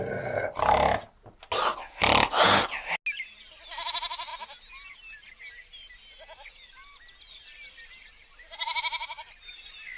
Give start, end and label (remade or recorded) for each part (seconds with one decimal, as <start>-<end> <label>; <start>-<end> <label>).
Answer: 0.0-10.0 recorded